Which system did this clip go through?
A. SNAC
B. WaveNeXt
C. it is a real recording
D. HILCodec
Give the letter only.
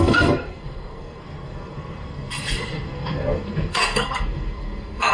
A